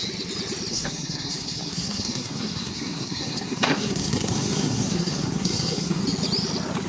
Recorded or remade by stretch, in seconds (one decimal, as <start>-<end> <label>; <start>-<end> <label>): 0.0-0.7 recorded; 0.7-6.0 remade; 6.0-6.9 recorded